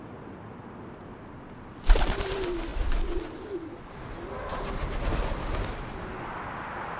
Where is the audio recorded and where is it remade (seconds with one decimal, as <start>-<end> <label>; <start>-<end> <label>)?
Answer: 0.0-7.0 recorded